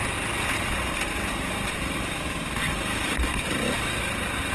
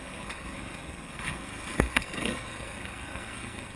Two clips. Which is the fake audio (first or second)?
second